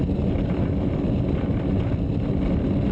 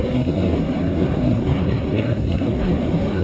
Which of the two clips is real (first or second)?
first